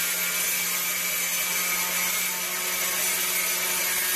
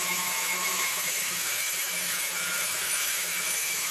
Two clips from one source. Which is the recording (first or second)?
first